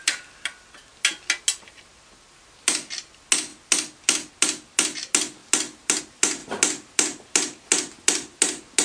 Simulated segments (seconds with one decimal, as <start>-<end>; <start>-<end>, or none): none